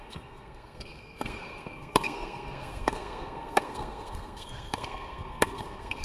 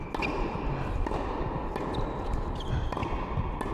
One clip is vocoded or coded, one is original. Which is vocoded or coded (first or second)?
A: first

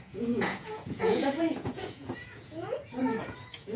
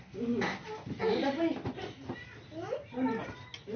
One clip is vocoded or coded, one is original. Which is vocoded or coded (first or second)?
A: first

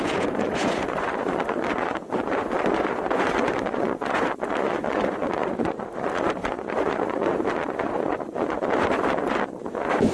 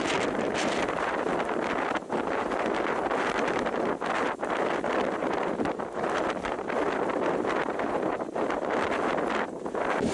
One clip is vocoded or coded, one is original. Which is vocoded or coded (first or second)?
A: first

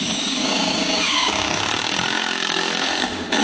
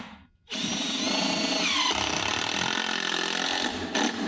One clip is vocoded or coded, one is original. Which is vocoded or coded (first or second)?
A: first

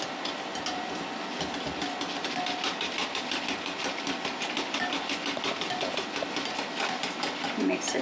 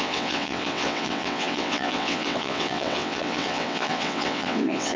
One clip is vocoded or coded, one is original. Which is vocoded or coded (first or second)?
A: second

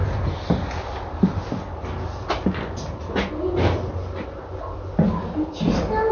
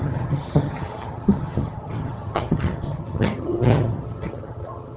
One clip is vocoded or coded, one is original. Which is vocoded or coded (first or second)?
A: second